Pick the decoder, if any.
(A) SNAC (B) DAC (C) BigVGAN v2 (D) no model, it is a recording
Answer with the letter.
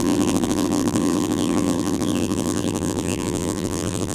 C